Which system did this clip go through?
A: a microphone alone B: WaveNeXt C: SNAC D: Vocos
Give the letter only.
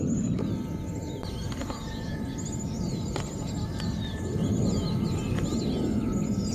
A